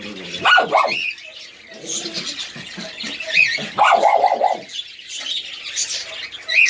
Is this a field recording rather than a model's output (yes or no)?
yes